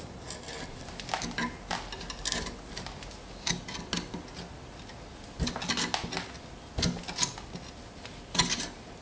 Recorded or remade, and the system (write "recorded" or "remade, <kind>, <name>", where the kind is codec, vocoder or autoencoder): recorded